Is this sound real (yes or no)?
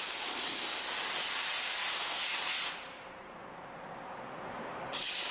no